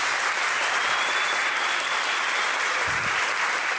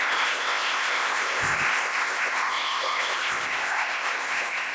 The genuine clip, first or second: first